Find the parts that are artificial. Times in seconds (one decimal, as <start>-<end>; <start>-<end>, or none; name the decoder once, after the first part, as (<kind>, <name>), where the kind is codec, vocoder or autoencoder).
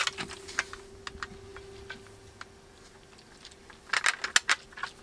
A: none